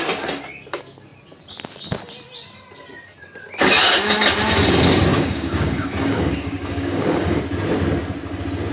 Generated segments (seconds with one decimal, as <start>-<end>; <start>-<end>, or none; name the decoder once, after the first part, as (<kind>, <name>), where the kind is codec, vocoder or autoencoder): 5.1-7.4 (codec, DAC)